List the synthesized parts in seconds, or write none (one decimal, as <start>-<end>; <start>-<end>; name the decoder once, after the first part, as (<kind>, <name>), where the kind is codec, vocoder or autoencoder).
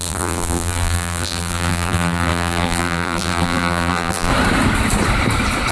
0.0-4.3 (vocoder, BigVGAN v2)